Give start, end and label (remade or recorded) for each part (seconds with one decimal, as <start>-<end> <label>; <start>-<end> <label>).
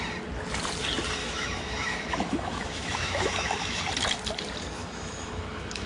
0.0-1.2 recorded; 1.2-3.8 remade; 3.8-4.8 recorded; 4.8-5.9 remade